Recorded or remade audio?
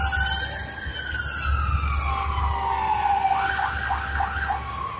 recorded